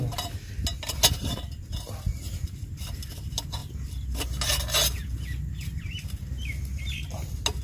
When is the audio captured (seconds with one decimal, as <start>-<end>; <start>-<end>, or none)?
0.0-7.6

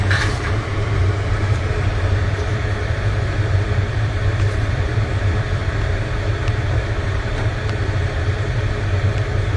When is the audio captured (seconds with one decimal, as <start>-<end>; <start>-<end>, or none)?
none

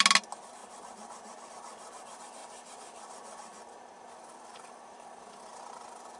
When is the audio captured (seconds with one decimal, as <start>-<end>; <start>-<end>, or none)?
0.0-0.6; 1.5-2.4; 5.2-6.2

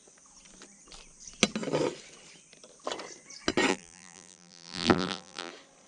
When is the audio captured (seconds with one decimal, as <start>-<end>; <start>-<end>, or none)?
0.0-3.7; 5.5-5.9

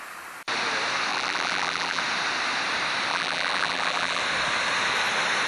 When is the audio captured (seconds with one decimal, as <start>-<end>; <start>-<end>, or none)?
0.0-1.1; 2.0-3.1; 4.2-5.5

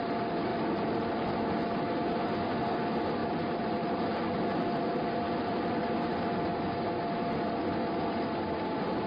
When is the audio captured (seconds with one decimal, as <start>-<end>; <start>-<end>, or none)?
0.0-0.5; 1.3-3.2; 4.8-9.1